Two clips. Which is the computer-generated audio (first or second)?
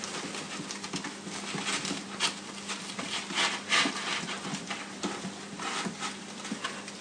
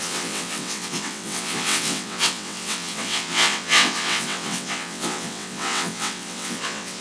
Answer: second